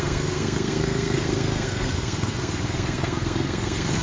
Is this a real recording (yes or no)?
no